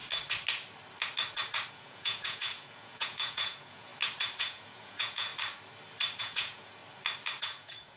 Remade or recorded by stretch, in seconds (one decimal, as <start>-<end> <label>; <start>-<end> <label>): 0.0-1.7 recorded; 1.7-3.9 remade; 3.9-4.4 recorded; 4.4-5.3 remade; 5.3-6.2 recorded; 6.2-6.8 remade; 6.8-7.4 recorded; 7.4-8.0 remade